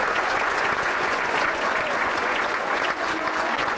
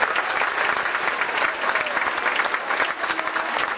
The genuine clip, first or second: second